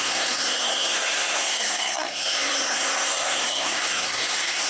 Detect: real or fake fake